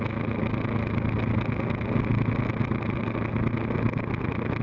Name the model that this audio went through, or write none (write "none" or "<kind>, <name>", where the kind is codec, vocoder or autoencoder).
none